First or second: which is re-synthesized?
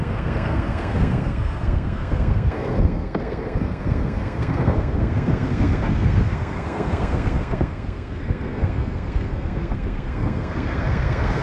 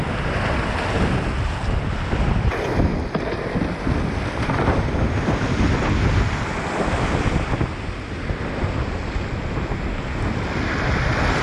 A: first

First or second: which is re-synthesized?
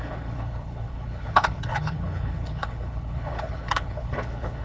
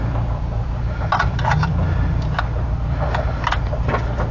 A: first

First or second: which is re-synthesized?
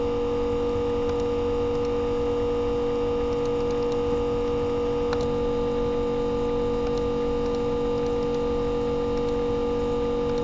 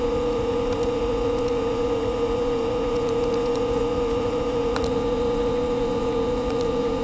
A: second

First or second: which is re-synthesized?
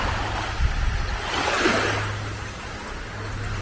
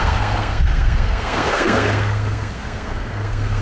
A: second